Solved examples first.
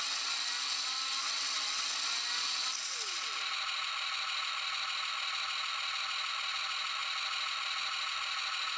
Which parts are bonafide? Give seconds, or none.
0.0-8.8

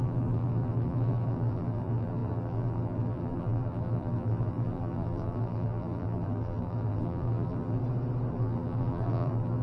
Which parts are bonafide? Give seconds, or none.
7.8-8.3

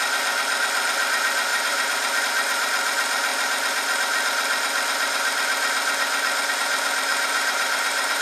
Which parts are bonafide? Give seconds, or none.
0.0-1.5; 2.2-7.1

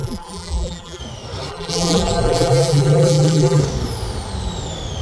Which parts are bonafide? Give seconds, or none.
1.0-1.5; 3.6-5.0

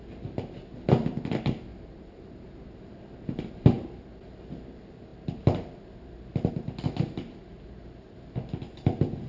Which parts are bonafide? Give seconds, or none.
0.0-1.7; 3.0-9.3

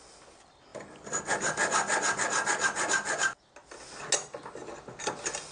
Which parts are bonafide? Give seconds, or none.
0.0-5.5

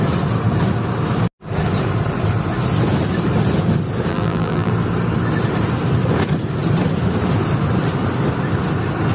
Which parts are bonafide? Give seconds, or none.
0.0-4.1; 4.7-9.1

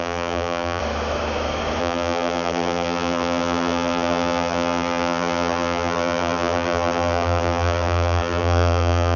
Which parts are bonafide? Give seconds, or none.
0.8-1.8